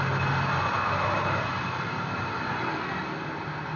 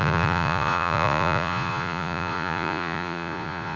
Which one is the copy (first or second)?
second